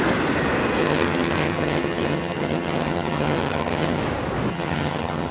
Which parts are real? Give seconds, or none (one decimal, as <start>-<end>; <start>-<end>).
0.0-0.8; 4.0-4.5